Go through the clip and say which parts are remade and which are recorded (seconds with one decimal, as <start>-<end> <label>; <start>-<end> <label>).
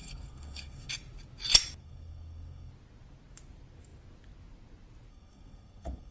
0.0-0.9 remade; 0.9-1.8 recorded; 1.8-2.7 remade; 2.7-5.1 recorded; 5.1-6.1 remade